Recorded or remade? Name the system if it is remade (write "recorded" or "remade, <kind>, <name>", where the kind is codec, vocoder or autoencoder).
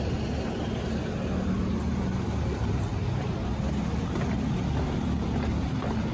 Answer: recorded